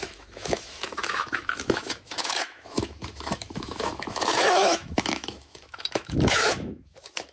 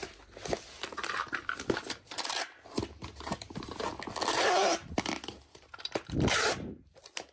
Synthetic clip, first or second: first